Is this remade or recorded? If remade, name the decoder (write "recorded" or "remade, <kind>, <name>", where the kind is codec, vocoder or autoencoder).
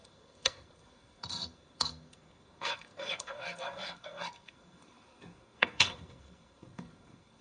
remade, codec, SNAC